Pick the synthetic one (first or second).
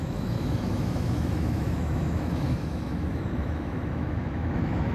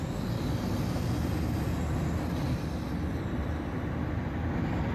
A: first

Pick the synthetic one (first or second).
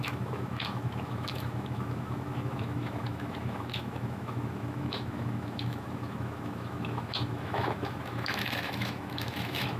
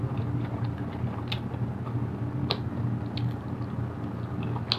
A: first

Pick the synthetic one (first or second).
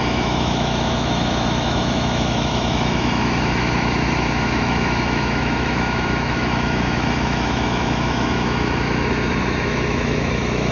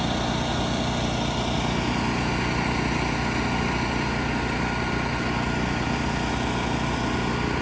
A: first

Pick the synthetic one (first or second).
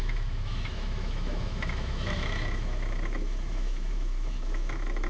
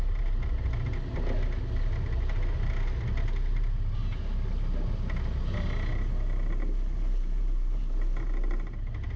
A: first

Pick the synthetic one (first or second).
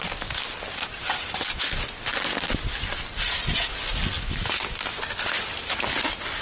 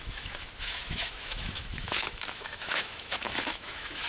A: second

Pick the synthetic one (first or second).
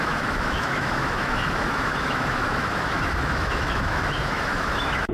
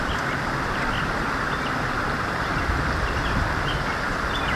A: first